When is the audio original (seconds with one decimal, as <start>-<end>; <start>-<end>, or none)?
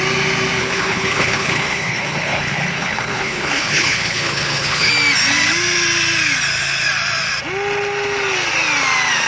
0.0-0.6; 4.9-9.3